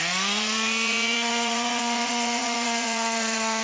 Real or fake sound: fake